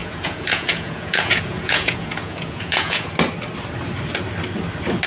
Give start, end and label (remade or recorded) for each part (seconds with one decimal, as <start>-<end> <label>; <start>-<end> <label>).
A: 0.0-3.1 remade; 3.1-5.1 recorded